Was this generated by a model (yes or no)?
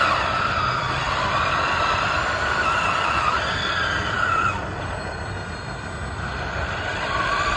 no